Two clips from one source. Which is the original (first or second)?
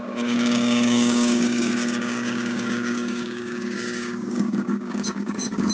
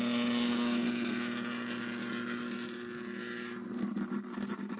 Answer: second